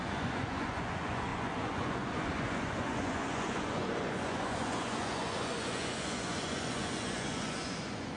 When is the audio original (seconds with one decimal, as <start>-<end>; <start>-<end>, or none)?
none

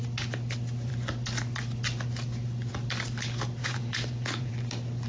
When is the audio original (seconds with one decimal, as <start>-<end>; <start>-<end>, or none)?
0.0-3.6; 4.5-5.1